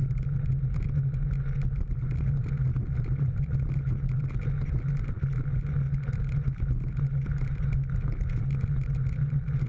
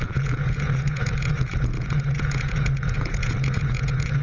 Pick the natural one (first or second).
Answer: first